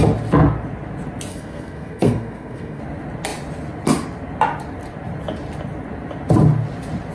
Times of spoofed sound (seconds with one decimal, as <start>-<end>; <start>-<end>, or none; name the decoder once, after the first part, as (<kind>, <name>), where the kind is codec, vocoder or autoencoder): 1.3-2.8 (codec, SNAC)